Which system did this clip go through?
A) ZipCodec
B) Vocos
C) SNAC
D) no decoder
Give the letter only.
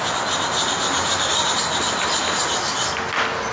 D